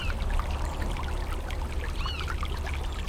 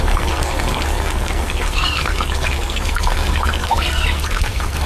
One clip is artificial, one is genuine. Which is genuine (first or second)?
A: first